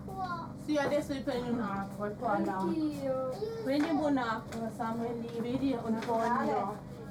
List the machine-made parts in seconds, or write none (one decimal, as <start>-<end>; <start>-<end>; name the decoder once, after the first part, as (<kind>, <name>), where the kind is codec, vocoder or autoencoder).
none

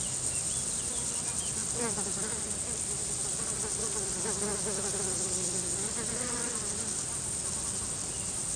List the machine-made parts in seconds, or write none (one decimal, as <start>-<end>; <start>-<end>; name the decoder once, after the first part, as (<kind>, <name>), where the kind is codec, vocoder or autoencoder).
none

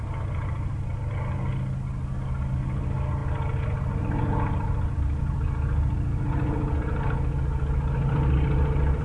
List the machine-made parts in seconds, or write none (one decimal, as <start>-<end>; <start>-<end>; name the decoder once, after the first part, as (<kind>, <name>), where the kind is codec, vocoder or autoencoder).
none

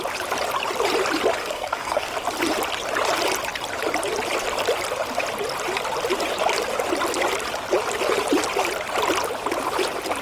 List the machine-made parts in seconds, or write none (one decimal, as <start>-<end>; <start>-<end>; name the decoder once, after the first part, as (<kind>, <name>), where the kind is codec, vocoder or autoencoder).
1.4-2.1 (codec, SNAC)

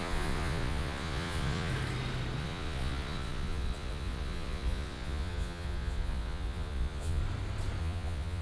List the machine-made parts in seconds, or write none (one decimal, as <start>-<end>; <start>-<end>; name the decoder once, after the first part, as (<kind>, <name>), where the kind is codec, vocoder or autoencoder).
0.0-1.7 (vocoder, Vocos); 2.4-7.2; 7.8-8.4

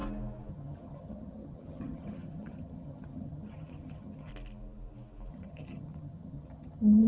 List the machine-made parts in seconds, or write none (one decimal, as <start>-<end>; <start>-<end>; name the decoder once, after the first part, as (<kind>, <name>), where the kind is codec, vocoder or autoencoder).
0.5-4.3 (vocoder, HiFi-GAN); 5.3-7.1